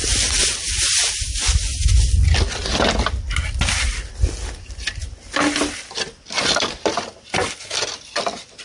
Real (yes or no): yes